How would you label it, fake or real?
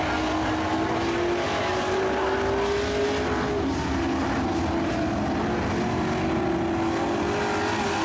real